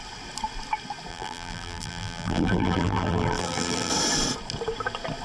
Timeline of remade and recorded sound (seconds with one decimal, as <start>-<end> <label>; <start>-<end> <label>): 0.0-1.1 recorded; 1.1-3.9 remade; 3.9-5.2 recorded